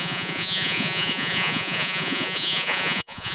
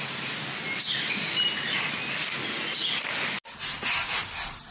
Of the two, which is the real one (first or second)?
second